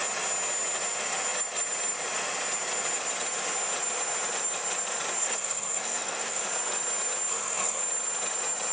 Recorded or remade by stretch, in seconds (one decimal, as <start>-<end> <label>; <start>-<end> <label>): 0.0-5.2 recorded; 5.2-6.4 remade; 6.4-7.3 recorded; 7.3-7.8 remade; 7.8-8.7 recorded